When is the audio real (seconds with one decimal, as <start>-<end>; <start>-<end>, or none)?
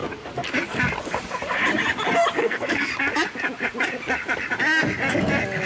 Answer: 0.0-2.4; 2.9-5.7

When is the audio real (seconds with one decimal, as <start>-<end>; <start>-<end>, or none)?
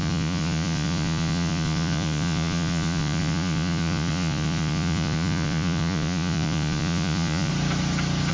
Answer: 7.5-8.3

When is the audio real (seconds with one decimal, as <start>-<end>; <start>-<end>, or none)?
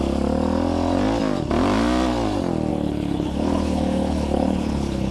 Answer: 0.0-2.7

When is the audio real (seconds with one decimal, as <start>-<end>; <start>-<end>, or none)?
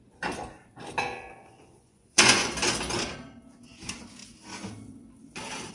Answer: 0.0-1.4; 2.5-5.7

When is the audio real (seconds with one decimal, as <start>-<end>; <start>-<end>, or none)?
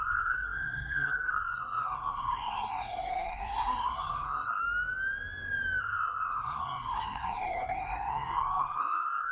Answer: 4.6-5.8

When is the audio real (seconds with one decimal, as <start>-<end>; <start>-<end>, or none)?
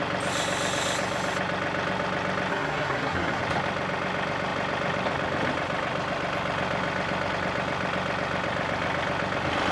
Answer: 0.0-2.5; 3.4-9.7